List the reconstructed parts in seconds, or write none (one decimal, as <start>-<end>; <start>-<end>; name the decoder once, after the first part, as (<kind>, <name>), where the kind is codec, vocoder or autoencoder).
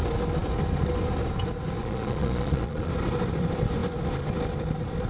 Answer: 1.8-2.9 (vocoder, Vocos)